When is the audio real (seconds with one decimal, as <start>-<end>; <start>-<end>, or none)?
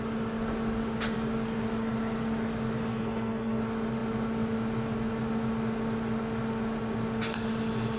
0.0-2.9; 3.6-8.0